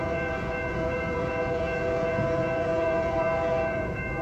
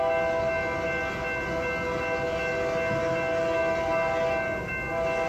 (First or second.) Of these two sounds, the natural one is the second